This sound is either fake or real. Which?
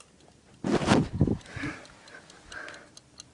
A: real